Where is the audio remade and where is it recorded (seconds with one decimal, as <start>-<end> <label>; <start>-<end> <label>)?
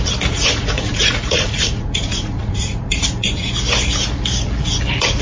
0.0-0.4 recorded; 0.4-3.5 remade; 3.5-5.2 recorded